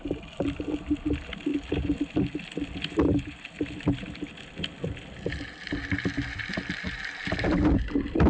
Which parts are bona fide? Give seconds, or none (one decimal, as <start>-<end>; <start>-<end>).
0.0-8.3